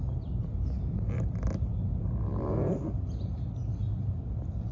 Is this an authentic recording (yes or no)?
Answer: yes